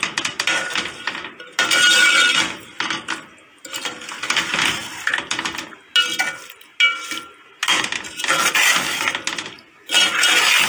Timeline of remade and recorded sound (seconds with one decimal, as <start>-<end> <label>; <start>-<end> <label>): 0.0-10.7 recorded